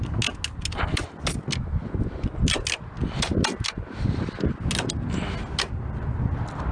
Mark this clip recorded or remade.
recorded